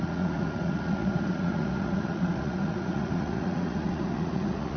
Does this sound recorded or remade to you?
remade